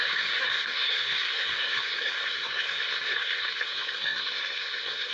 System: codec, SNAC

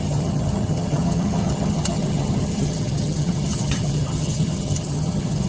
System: vocoder, HiFi-GAN